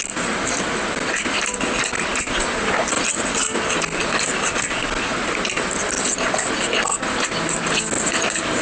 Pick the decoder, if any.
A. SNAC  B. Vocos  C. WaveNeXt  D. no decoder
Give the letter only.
D